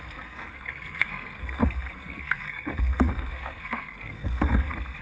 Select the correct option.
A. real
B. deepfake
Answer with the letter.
B